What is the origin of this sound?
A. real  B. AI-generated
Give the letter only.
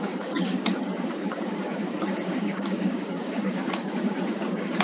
B